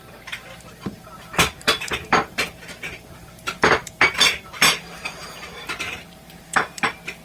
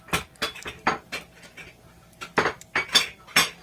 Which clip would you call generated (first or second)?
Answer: first